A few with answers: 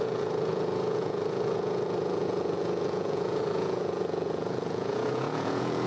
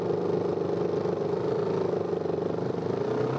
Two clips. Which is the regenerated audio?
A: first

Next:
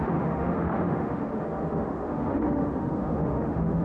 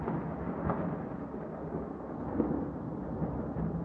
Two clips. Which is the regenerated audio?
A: first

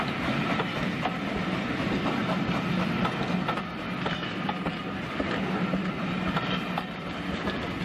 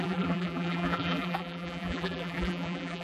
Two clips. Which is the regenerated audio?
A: second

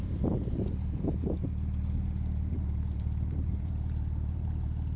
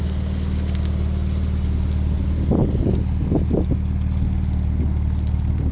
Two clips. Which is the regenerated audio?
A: first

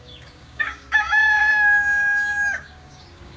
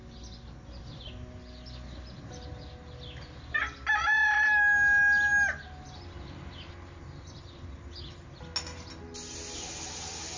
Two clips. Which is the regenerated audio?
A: first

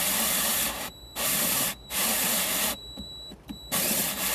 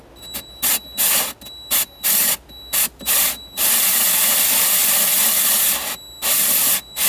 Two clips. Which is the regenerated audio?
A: first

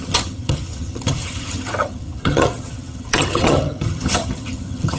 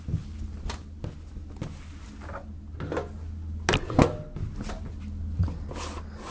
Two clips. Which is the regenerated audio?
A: first